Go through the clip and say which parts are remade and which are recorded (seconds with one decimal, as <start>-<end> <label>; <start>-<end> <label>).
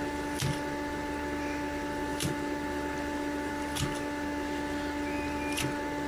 0.0-2.1 recorded; 2.1-3.5 remade; 3.5-6.1 recorded